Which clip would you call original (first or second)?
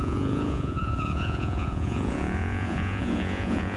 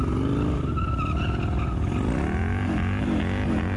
second